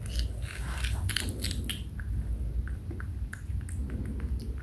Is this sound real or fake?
real